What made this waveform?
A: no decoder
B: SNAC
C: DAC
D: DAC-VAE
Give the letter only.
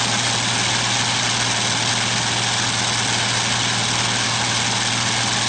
A